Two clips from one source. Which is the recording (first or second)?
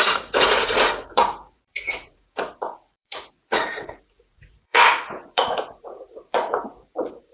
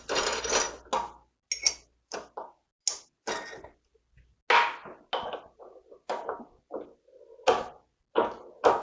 second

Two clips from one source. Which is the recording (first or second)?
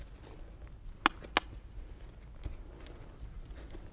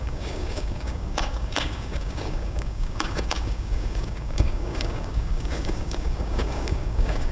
first